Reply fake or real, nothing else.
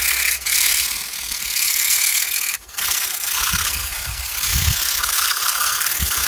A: fake